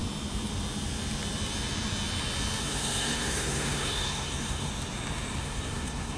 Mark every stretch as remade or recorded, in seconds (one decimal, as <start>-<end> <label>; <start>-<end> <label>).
0.0-2.6 recorded; 2.6-4.7 remade; 4.7-5.4 recorded; 5.4-6.2 remade